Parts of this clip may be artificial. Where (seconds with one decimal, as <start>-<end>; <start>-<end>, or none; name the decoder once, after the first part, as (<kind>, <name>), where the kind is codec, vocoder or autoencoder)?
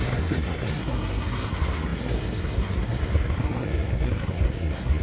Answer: 0.0-5.0 (codec, SNAC)